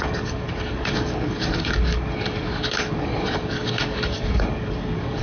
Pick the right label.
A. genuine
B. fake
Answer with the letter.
B